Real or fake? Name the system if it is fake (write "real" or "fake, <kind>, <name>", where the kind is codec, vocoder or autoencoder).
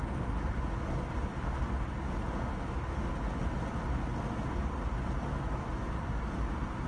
real